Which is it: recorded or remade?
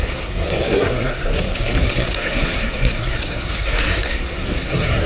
remade